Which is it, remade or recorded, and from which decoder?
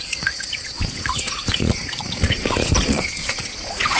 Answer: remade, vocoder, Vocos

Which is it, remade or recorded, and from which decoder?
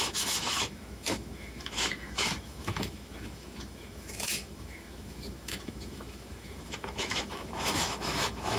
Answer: remade, autoencoder, DAC-VAE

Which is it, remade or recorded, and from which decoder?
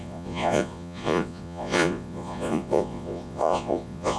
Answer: remade, vocoder, Vocos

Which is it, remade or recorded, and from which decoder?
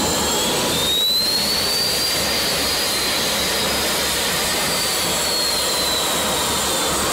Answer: remade, vocoder, BigVGAN v2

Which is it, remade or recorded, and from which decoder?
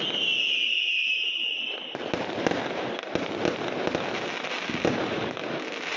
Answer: recorded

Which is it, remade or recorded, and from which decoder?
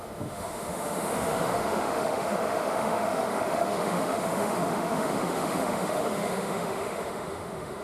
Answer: remade, autoencoder, DAC-VAE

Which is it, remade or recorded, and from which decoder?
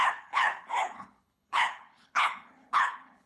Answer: remade, codec, HILCodec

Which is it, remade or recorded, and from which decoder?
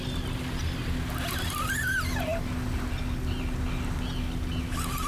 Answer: recorded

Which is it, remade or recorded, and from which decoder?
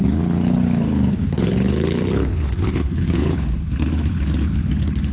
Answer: remade, codec, HILCodec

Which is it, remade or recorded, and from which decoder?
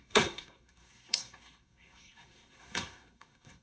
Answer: remade, codec, SNAC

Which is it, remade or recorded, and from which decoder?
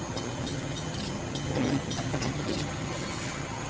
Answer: remade, vocoder, HiFi-GAN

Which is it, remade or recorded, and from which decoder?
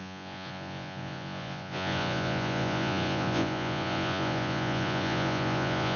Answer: remade, vocoder, Vocos